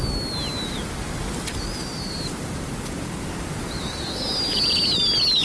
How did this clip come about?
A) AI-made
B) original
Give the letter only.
B